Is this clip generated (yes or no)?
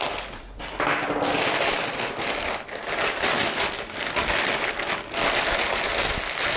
no